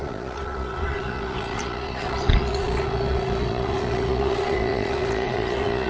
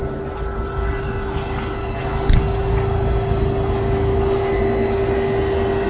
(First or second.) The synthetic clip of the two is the first